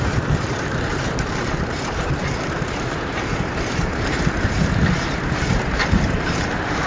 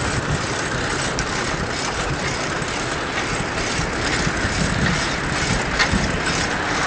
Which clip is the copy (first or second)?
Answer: first